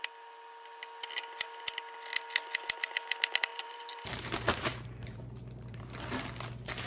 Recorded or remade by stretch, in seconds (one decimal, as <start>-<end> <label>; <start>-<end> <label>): 0.0-3.5 recorded; 3.5-5.8 remade; 5.8-6.9 recorded